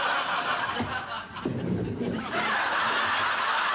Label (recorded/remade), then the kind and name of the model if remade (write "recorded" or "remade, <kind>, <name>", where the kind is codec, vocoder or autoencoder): remade, vocoder, BigVGAN v2